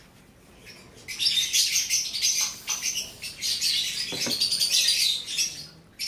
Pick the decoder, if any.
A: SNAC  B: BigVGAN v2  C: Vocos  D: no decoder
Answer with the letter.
D